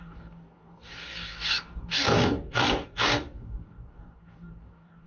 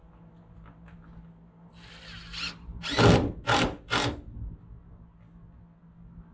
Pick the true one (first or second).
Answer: second